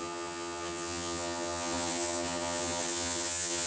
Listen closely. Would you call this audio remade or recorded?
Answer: remade